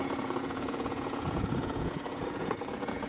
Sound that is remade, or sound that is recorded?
remade